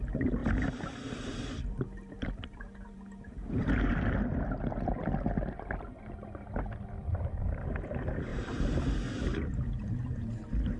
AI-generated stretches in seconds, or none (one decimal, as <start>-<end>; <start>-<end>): 0.4-3.6; 7.1-7.9; 8.3-8.8